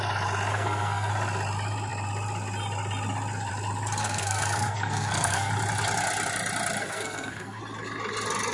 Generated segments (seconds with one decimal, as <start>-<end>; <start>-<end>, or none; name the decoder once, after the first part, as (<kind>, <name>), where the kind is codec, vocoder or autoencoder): 0.5-1.1 (codec, SNAC); 4.0-5.5; 6.8-7.6